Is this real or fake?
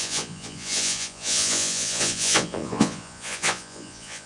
fake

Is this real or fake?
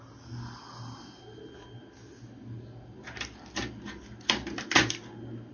real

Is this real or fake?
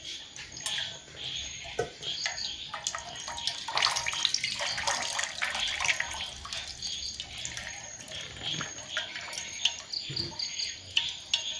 real